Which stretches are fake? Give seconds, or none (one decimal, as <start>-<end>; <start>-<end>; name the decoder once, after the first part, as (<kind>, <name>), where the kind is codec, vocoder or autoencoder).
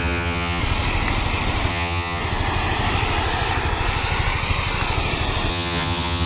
0.0-0.6 (vocoder, HiFi-GAN); 1.7-2.2; 5.5-6.3